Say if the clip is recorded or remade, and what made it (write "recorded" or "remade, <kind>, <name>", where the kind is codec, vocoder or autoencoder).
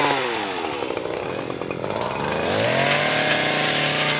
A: recorded